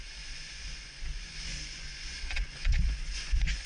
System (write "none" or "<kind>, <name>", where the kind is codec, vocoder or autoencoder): vocoder, Vocos